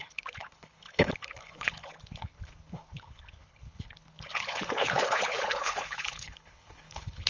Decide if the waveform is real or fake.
fake